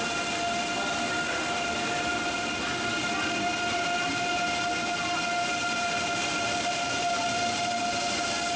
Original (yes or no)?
yes